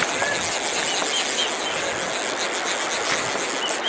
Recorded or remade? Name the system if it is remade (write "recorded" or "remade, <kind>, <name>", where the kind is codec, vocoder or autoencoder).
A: recorded